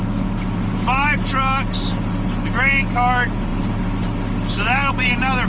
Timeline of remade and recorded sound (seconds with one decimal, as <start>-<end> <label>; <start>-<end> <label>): 0.0-5.5 recorded

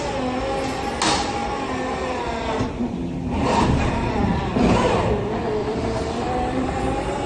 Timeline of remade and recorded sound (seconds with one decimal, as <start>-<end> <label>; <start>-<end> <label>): 0.0-5.6 recorded; 5.6-6.8 remade; 6.8-7.3 recorded

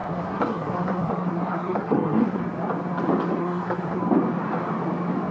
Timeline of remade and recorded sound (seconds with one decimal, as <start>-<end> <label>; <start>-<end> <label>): 0.0-2.4 remade; 2.4-3.4 recorded; 3.4-4.0 remade; 4.0-5.3 recorded

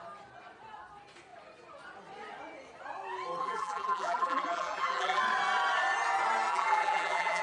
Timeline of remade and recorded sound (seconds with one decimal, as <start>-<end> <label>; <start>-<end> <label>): 0.0-3.4 recorded; 3.4-5.2 remade; 5.2-6.5 recorded; 6.5-7.4 remade